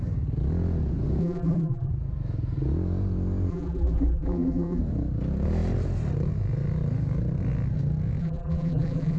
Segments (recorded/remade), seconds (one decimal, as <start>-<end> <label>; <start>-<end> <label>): 0.0-1.2 recorded; 1.2-1.9 remade; 1.9-3.5 recorded; 3.5-4.8 remade; 4.8-8.2 recorded; 8.2-9.2 remade